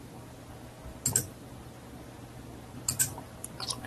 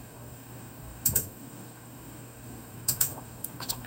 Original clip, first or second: first